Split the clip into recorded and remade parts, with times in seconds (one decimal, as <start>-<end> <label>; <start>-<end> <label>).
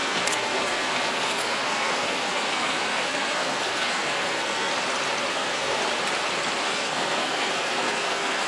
0.0-4.7 remade; 4.7-5.3 recorded; 5.3-5.8 remade; 5.8-6.6 recorded; 6.6-8.5 remade